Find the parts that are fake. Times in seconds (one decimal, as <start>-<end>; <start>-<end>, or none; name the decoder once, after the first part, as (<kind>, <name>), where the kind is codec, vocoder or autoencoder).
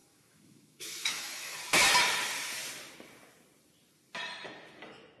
0.0-1.6 (autoencoder, DAC-VAE)